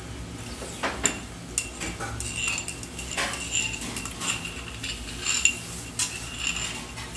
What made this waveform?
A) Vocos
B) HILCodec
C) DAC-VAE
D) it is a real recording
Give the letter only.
D